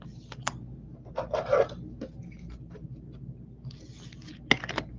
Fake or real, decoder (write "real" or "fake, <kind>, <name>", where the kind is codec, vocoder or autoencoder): real